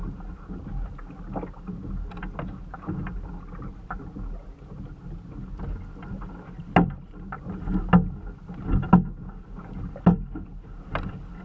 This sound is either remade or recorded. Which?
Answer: recorded